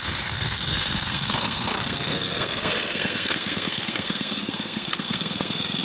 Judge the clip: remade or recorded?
remade